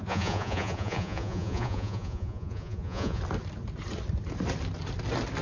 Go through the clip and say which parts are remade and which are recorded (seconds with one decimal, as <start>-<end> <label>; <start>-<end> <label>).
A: 0.0-3.2 remade; 3.2-5.4 recorded